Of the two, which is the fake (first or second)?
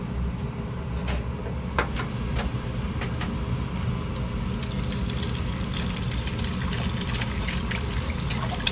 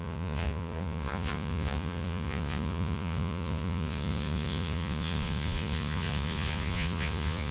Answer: second